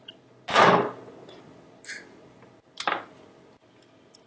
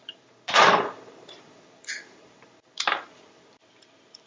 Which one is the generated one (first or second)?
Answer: second